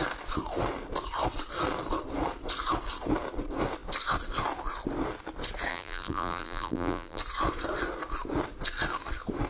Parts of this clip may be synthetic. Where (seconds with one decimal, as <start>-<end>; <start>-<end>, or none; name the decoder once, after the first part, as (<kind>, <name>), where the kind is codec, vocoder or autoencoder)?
5.7-7.2 (vocoder, BigVGAN v2)